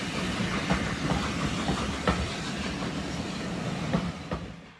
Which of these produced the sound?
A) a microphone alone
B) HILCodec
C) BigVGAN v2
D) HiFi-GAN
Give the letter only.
A